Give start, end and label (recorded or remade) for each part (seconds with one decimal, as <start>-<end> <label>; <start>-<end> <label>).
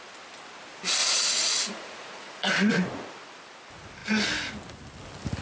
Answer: 0.0-1.0 recorded; 1.0-2.7 remade; 2.7-5.4 recorded